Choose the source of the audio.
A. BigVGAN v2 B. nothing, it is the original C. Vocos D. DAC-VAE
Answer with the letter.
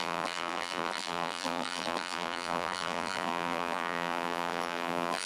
A